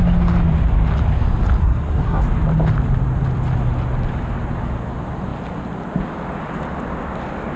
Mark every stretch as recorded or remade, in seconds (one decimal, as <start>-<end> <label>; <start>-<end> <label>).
0.0-1.6 recorded; 1.6-2.2 remade; 2.2-7.6 recorded